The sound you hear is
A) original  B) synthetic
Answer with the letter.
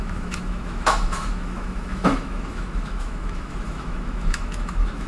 B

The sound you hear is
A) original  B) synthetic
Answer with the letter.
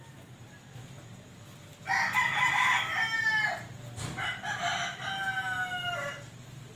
A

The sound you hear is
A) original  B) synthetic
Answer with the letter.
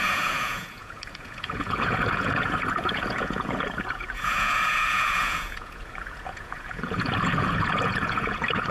B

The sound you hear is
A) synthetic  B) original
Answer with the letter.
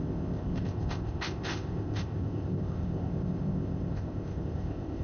A